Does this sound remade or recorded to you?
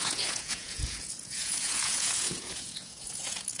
remade